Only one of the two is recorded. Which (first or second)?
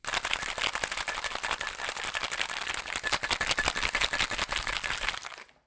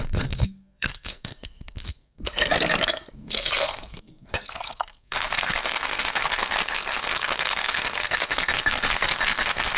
first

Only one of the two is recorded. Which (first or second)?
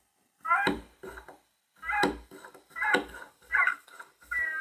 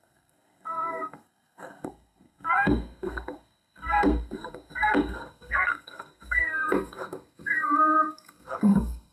first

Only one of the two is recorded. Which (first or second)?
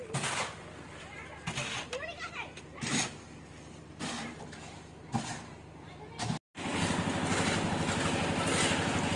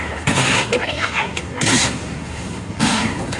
first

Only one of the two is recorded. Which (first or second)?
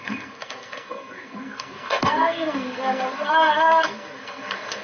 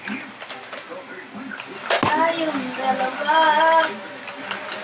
second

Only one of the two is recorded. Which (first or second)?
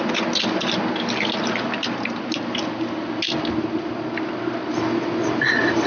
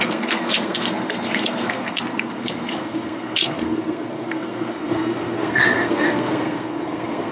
first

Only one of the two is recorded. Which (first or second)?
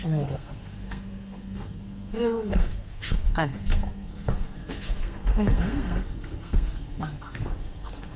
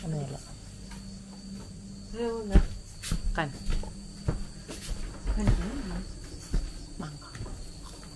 second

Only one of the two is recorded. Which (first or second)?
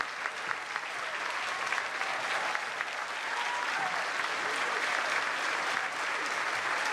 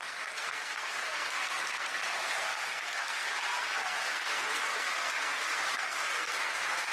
first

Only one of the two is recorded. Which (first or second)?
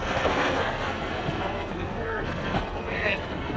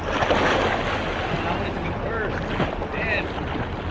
second